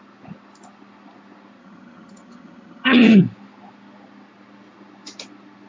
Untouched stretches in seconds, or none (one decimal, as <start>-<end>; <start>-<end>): 0.0-1.6; 3.2-5.7